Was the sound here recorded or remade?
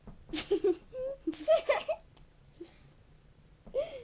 recorded